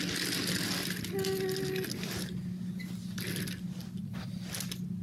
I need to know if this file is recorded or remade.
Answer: recorded